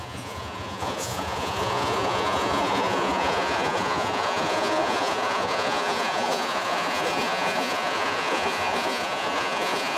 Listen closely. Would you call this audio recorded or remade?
remade